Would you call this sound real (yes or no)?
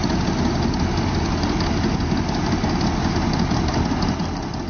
yes